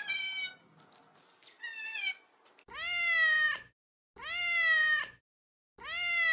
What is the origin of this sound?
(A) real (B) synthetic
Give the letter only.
A